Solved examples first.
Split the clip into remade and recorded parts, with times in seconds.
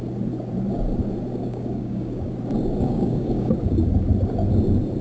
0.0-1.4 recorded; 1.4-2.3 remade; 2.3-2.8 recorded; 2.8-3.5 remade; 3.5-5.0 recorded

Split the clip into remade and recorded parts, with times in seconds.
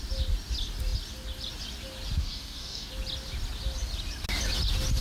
0.0-2.2 recorded; 2.2-2.9 remade; 2.9-5.0 recorded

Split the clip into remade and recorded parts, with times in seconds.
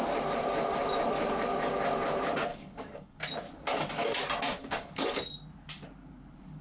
0.0-2.5 recorded; 2.5-3.2 remade; 3.2-4.6 recorded; 4.6-5.2 remade; 5.2-6.6 recorded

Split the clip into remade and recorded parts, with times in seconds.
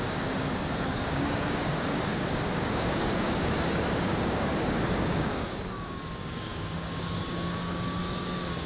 0.0-8.7 remade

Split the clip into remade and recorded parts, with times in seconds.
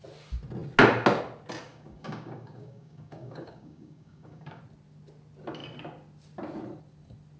0.0-1.7 recorded; 1.7-4.6 remade; 4.6-7.4 recorded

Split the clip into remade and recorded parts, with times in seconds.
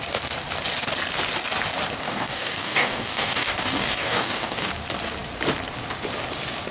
0.0-2.0 recorded; 2.0-4.7 remade; 4.7-6.7 recorded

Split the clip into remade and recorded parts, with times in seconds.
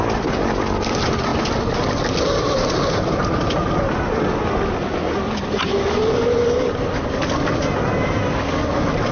0.0-9.1 recorded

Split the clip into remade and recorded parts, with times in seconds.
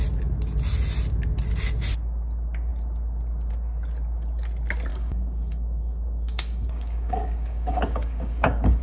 0.0-4.9 recorded; 4.9-8.8 remade